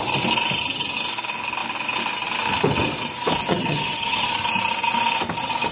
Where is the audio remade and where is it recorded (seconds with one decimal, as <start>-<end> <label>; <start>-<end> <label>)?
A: 0.0-3.5 recorded; 3.5-4.2 remade; 4.2-5.7 recorded